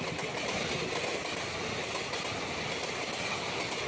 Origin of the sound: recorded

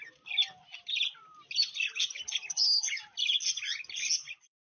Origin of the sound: recorded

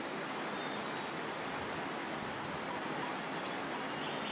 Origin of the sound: recorded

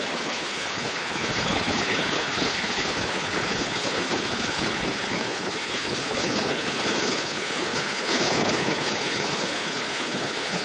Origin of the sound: remade